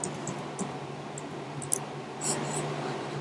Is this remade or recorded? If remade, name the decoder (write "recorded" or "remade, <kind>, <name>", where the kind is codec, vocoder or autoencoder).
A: recorded